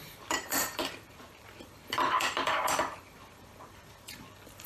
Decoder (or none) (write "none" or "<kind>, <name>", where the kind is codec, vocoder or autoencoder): vocoder, BigVGAN v2